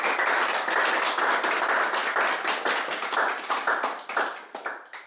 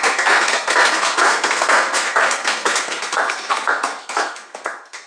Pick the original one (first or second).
first